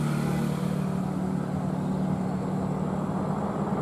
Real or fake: real